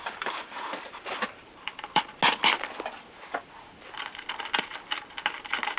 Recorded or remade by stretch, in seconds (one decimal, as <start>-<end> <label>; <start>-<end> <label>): 0.0-2.2 remade; 2.2-5.8 recorded